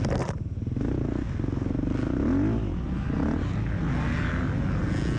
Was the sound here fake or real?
real